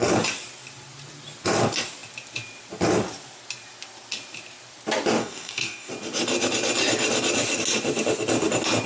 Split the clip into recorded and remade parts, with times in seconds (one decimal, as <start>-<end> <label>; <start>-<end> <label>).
0.0-5.2 recorded; 5.2-5.9 remade; 5.9-8.9 recorded